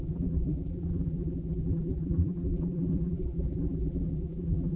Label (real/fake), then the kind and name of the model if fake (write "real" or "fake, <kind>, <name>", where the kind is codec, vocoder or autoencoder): fake, vocoder, BigVGAN v2